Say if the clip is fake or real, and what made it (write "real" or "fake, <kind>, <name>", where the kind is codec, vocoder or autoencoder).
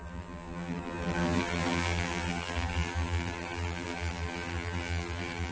fake, vocoder, BigVGAN v2